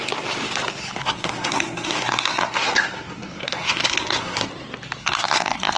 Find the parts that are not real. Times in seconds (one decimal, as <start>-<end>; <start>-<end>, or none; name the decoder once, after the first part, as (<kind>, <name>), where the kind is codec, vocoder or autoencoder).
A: 1.0-4.5 (codec, SNAC); 5.0-5.8